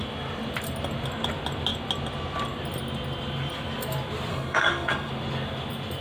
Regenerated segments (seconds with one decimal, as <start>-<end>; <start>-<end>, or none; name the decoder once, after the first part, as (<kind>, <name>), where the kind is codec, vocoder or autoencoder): 4.3-5.1 (codec, SNAC)